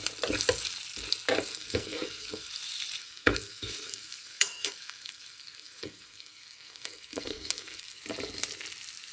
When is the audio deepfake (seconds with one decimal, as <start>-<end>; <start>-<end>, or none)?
1.5-2.5; 3.0-8.0